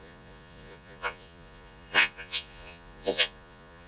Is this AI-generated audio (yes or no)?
yes